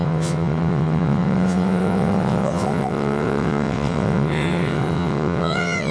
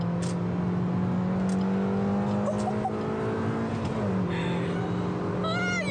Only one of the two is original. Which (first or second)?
second